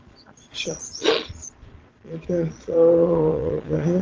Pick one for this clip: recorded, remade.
remade